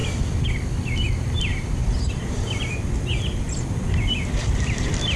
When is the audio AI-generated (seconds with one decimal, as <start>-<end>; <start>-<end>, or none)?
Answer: 1.1-1.5; 2.1-5.2